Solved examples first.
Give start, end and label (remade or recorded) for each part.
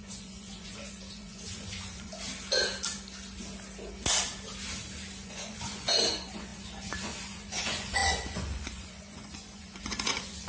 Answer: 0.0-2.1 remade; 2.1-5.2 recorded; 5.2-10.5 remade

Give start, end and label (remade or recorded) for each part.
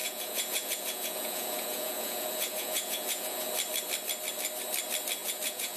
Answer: 0.0-3.5 remade; 3.5-5.2 recorded; 5.2-5.8 remade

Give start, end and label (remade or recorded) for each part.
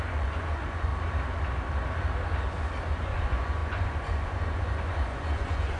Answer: 0.0-0.9 remade; 0.9-2.9 recorded; 2.9-5.8 remade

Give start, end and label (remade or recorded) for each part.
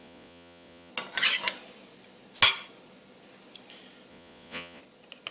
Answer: 0.0-0.9 remade; 0.9-4.1 recorded; 4.1-4.8 remade; 4.8-5.3 recorded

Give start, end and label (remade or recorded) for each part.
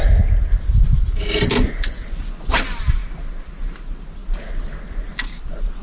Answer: 0.0-5.8 recorded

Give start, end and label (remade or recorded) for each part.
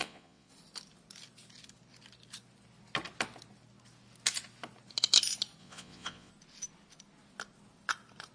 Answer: 0.0-0.5 remade; 0.5-5.6 recorded; 5.6-6.3 remade; 6.3-8.3 recorded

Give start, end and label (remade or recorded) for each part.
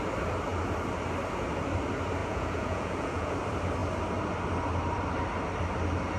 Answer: 0.0-2.2 recorded; 2.2-3.3 remade; 3.3-6.2 recorded